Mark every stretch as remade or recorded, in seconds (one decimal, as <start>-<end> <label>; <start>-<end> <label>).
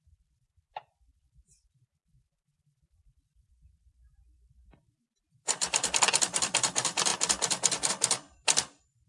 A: 0.0-7.1 remade; 7.1-7.9 recorded; 7.9-9.1 remade